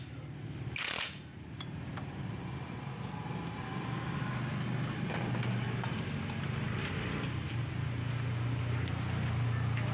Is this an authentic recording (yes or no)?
yes